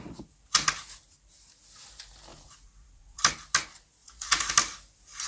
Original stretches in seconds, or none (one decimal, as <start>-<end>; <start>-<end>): 0.0-2.3; 3.2-4.0; 4.5-5.3